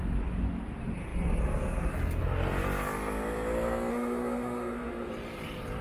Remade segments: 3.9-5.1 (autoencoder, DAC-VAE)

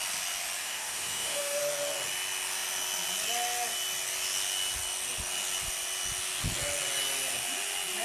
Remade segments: 0.6-1.6 (autoencoder, DAC-VAE)

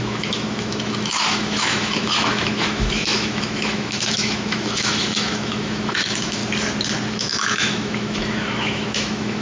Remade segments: 0.0-6.4 (autoencoder, DAC-VAE); 7.1-9.4

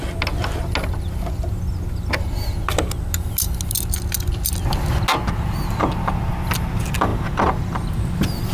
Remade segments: none

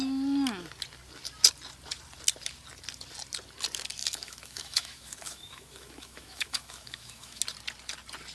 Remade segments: 4.0-7.4 (autoencoder, DAC-VAE)

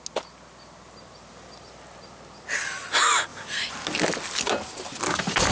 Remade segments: none

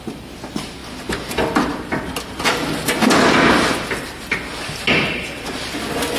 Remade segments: none